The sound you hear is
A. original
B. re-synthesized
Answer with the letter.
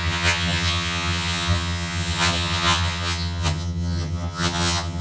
B